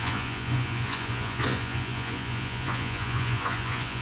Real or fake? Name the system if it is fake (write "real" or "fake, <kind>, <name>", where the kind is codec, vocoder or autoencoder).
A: fake, vocoder, Vocos